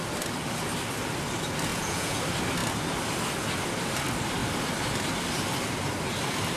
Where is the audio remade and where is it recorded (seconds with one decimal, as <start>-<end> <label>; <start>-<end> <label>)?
0.0-1.7 recorded; 1.7-2.2 remade; 2.2-6.6 recorded